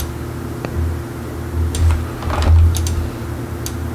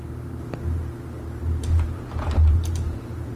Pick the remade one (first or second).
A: second